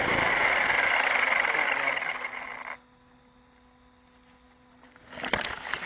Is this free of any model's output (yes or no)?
yes